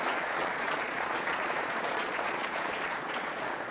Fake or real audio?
fake